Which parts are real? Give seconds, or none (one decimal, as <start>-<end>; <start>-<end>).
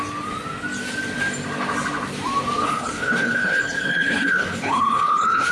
0.0-2.6